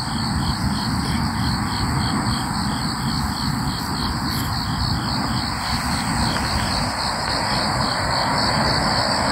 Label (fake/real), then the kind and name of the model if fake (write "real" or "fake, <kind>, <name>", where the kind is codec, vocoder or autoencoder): real